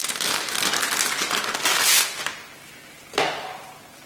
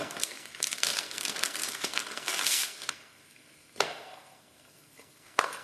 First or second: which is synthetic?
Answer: second